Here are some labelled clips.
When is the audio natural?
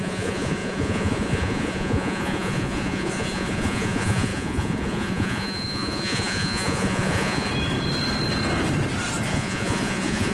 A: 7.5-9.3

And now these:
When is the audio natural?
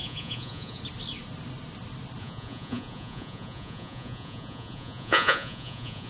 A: 0.8-2.2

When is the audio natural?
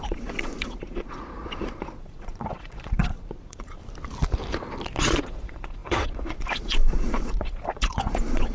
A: 3.8-5.0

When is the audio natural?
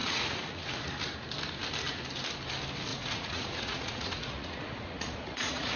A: 1.0-2.9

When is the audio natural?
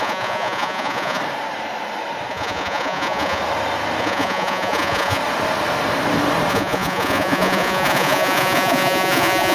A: 1.2-2.3; 3.4-4.0; 5.2-6.5